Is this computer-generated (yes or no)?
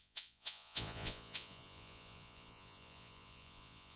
yes